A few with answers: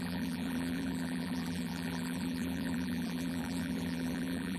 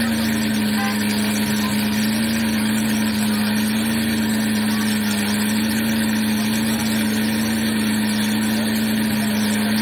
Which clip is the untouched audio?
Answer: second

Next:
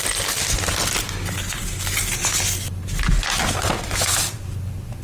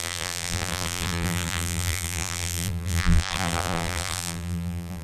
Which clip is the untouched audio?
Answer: first